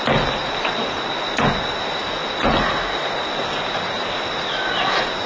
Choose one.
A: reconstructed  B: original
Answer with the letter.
B